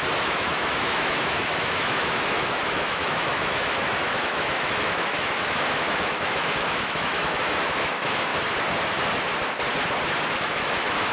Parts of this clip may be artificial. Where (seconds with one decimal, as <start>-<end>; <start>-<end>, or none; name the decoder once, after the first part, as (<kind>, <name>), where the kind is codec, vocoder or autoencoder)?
0.0-8.3 (autoencoder, DAC-VAE); 10.4-11.1